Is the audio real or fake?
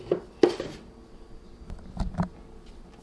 real